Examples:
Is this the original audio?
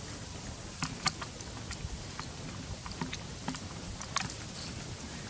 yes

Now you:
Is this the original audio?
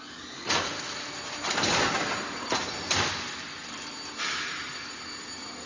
yes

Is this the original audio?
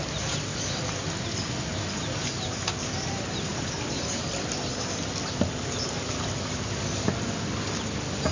yes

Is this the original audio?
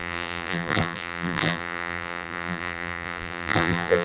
no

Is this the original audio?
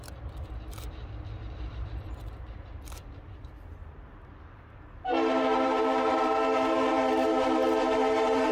no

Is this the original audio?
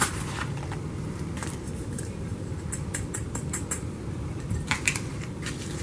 no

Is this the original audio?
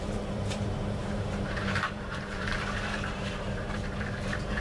no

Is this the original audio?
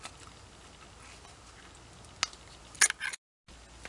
yes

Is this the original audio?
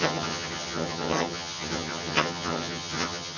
no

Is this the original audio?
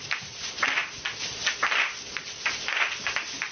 yes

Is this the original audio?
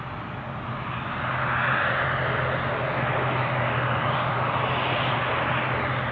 yes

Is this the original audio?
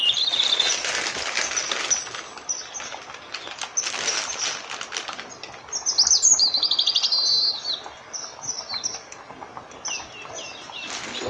yes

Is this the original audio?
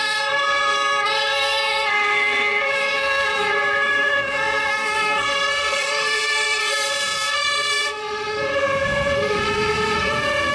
no